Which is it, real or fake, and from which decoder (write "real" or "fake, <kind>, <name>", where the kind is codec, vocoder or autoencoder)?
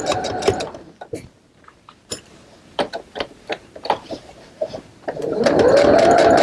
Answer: fake, vocoder, BigVGAN v2